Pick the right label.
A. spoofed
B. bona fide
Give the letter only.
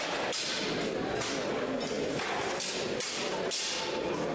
B